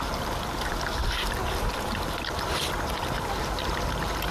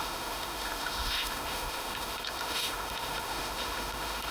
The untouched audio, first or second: first